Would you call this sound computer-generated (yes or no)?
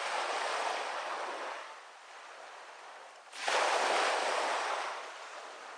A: yes